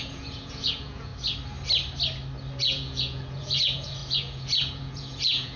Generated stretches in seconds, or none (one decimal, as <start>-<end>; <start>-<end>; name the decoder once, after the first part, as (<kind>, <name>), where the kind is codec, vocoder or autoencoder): 0.0-1.1 (vocoder, Vocos); 2.6-5.6